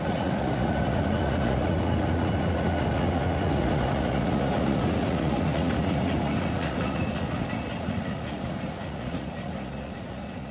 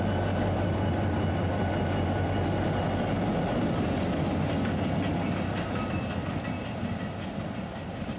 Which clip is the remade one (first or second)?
first